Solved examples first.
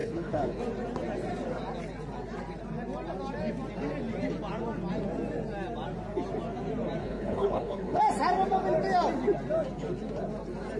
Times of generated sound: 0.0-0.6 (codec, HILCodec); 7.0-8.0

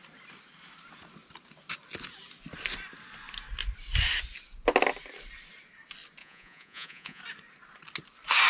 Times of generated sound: 6.2-7.2 (vocoder, Vocos)

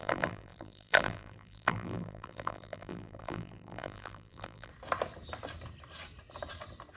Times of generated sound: 0.0-4.7 (vocoder, BigVGAN v2)

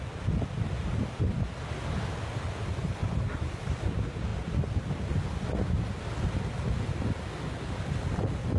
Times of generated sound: 3.0-3.7 (vocoder, BigVGAN v2)

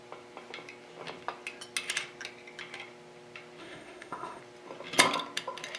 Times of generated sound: 3.6-4.4 (autoencoder, DAC-VAE)